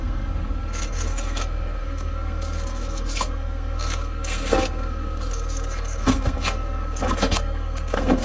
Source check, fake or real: fake